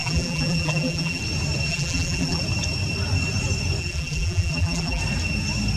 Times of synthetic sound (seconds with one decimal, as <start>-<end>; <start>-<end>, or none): 0.0-1.2; 1.7-2.4; 3.8-5.0